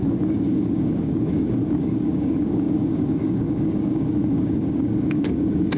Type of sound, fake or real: fake